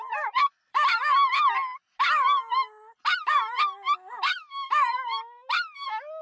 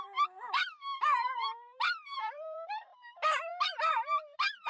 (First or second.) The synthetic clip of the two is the second